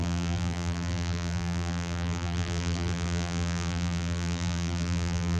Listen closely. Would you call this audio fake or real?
fake